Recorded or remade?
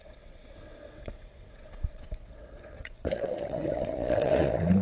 remade